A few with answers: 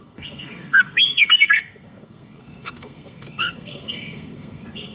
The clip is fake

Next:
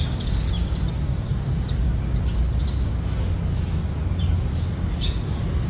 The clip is real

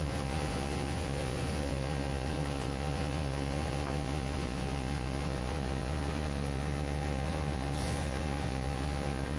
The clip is fake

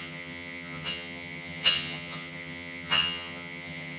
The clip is fake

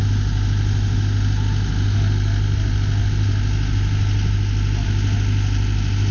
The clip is real